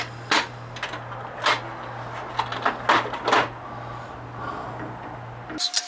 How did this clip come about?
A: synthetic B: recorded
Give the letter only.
B